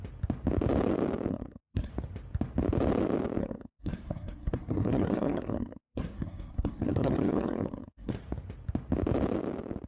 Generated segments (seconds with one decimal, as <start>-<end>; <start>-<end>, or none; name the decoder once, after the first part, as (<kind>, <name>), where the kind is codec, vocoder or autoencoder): 1.3-1.9 (codec, SNAC); 3.4-8.1